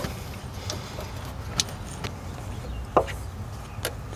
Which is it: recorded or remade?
recorded